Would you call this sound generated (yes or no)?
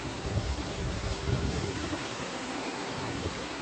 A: yes